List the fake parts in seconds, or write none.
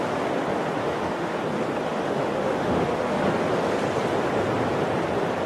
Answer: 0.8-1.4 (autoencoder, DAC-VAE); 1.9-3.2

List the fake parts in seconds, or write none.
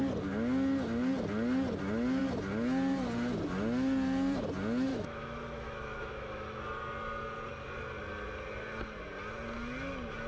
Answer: 4.9-6.6 (autoencoder, DAC-VAE)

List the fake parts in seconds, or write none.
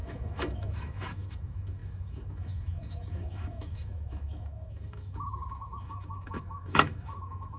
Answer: 0.0-7.6 (autoencoder, DAC-VAE)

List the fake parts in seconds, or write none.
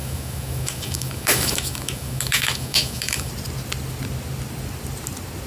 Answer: 0.0-3.3 (autoencoder, DAC-VAE)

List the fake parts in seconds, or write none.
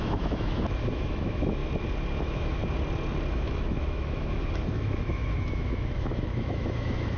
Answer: 0.0-1.6 (autoencoder, DAC-VAE); 2.2-2.6; 3.3-7.2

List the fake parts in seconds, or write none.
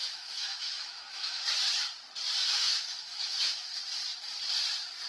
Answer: 0.0-1.4 (autoencoder, DAC-VAE); 2.4-3.8